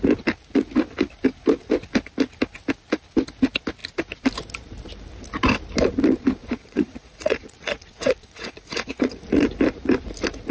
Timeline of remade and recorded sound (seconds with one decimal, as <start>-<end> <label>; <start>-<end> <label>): 0.0-6.4 recorded; 6.4-9.5 remade; 9.5-10.5 recorded